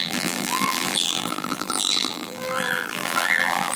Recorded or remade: remade